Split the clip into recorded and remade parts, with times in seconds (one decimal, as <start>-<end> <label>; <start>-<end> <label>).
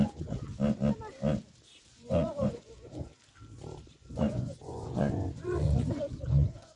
0.0-0.5 remade; 0.5-1.9 recorded; 1.9-3.1 remade; 3.1-3.9 recorded; 3.9-6.8 remade